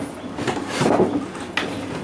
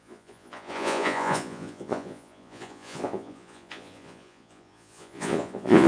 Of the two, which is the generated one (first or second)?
second